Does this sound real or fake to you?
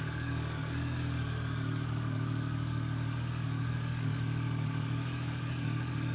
fake